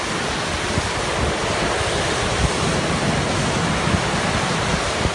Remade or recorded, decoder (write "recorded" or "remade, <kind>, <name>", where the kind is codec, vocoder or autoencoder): recorded